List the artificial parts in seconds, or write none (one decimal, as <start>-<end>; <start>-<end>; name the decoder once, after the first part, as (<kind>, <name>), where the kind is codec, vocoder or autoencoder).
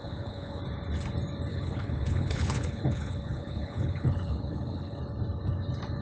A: 0.0-0.6 (codec, HILCodec); 1.5-5.0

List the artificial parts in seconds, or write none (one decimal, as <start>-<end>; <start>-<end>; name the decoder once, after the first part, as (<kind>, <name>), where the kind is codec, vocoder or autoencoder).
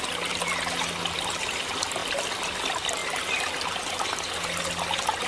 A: none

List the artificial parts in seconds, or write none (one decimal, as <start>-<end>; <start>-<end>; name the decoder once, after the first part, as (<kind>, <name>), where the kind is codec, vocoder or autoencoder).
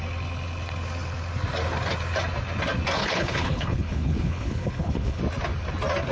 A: 3.0-5.2 (codec, HILCodec)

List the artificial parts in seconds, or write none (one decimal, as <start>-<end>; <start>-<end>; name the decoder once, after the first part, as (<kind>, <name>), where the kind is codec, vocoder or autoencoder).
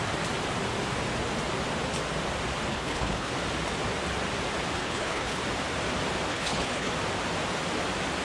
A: 2.7-3.3 (codec, HILCodec); 4.8-5.4; 6.3-6.9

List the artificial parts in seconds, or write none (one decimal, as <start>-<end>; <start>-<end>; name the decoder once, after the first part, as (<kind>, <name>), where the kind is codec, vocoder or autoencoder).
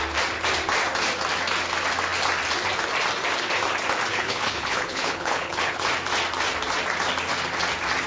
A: 4.1-5.8 (codec, HILCodec)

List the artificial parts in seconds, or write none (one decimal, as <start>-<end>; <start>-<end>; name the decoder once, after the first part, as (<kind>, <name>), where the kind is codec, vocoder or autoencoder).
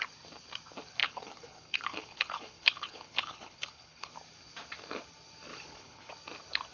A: 1.0-4.1 (codec, HILCodec); 5.5-6.1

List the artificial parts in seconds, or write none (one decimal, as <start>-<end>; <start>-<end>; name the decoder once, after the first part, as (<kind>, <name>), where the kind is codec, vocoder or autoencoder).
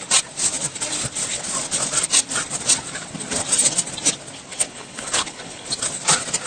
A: 4.5-5.7 (codec, HILCodec)